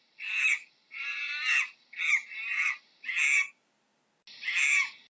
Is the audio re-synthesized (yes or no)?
no